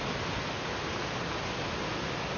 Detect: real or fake real